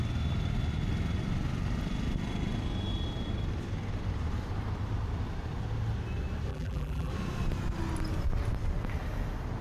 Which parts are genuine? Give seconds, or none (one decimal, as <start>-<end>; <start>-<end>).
0.0-6.5; 7.1-9.6